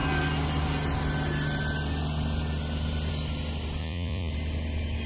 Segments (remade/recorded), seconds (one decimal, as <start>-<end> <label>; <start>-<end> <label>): 0.0-3.8 recorded; 3.8-4.3 remade; 4.3-5.1 recorded